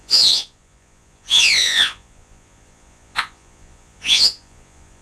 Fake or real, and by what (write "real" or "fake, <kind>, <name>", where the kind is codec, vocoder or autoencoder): fake, vocoder, Vocos